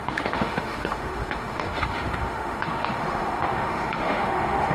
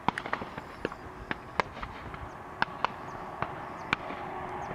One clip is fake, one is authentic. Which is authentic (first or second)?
second